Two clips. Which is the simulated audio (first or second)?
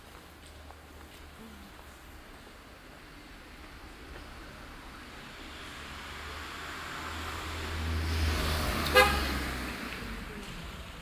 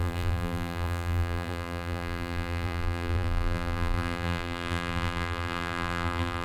second